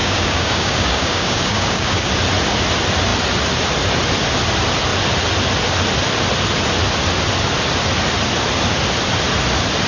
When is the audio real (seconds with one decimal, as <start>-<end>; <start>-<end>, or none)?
2.1-9.9